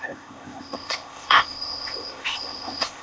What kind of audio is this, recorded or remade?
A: remade